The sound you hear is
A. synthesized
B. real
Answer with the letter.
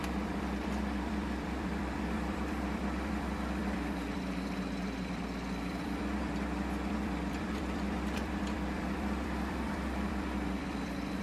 A